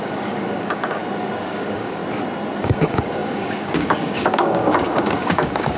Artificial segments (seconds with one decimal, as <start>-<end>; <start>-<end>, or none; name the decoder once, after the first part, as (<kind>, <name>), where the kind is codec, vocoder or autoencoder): 0.0-1.0 (codec, DAC); 1.5-2.0; 2.6-5.8